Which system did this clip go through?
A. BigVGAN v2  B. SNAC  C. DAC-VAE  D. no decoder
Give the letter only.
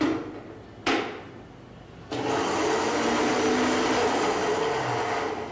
D